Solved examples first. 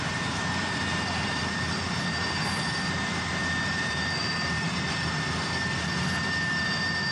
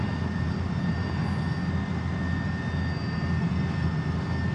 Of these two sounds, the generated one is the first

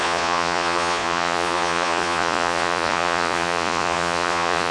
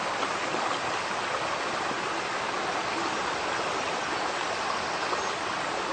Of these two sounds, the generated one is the first